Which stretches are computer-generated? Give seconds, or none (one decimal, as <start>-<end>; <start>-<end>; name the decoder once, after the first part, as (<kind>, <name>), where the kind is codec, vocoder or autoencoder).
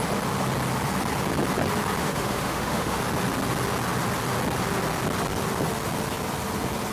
2.0-3.0 (autoencoder, DAC-VAE)